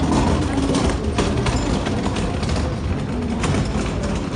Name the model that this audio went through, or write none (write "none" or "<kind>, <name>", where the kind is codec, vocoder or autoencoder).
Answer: none